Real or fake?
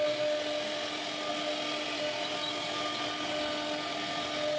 real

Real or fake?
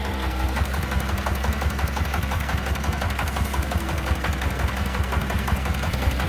fake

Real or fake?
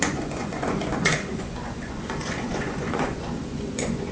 fake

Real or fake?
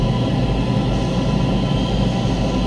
real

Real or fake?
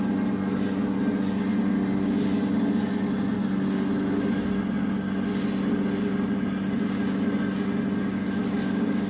real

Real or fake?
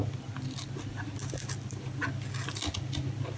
real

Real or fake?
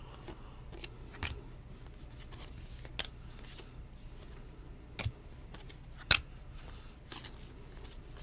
real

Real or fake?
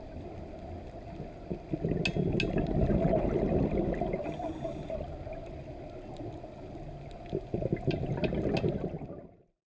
real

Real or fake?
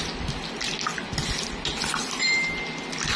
real